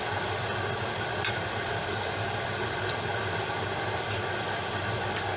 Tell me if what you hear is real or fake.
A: real